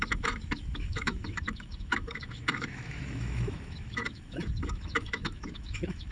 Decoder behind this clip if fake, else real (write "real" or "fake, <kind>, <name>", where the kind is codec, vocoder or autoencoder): fake, autoencoder, DAC-VAE